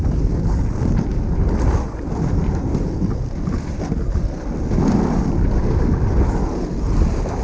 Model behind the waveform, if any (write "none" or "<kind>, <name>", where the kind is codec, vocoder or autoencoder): none